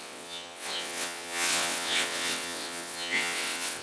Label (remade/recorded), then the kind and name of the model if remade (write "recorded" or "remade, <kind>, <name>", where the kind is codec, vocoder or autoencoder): remade, vocoder, WaveNeXt